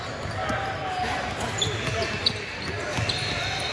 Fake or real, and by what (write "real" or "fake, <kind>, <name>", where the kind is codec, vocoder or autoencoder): real